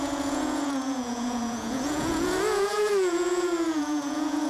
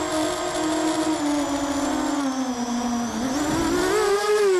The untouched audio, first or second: second